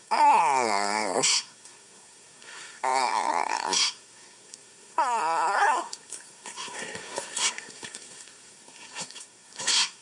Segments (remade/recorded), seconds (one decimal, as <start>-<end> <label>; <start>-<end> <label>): 0.0-10.0 remade